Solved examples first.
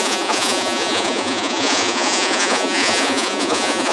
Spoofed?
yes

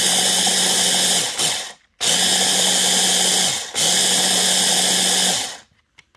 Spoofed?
no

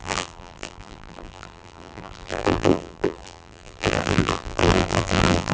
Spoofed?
yes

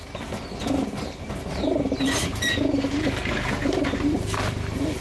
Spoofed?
yes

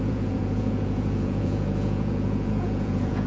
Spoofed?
yes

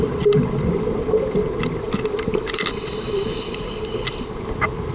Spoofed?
no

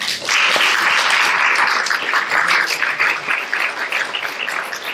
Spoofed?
no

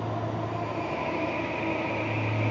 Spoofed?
no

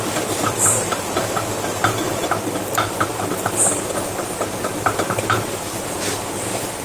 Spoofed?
yes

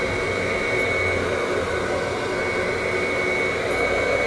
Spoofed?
no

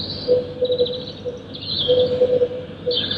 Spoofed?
no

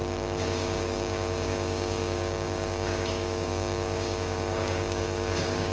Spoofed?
yes